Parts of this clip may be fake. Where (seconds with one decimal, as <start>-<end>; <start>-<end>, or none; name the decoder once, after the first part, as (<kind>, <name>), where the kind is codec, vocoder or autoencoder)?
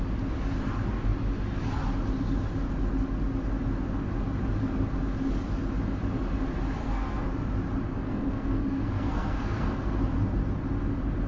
6.8-7.3 (codec, SNAC); 7.9-10.0